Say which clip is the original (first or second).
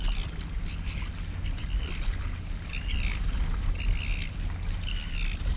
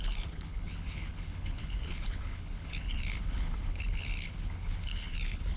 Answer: first